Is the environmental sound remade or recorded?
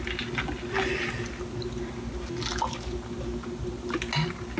recorded